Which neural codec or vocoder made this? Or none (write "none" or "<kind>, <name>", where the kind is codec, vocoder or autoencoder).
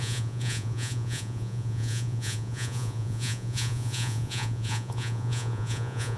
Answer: vocoder, Vocos